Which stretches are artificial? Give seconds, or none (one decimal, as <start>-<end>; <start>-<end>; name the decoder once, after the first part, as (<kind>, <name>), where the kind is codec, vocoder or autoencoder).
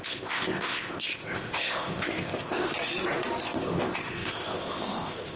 0.0-2.7 (codec, ZipCodec); 3.4-5.4